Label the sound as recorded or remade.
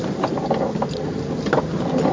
recorded